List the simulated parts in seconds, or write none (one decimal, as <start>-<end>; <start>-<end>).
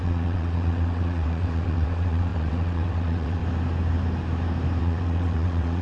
0.0-3.4; 4.8-5.8